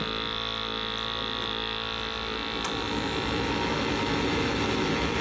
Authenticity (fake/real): real